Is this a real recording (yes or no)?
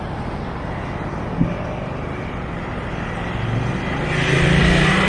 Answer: yes